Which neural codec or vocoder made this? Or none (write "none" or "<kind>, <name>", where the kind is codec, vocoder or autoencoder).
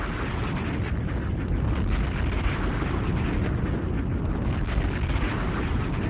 none